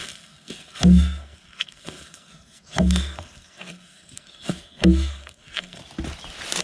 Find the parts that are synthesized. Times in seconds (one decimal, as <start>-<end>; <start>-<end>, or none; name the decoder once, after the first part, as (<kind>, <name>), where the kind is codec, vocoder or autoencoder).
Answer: 0.0-5.8 (codec, SNAC)